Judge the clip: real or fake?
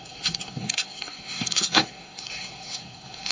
fake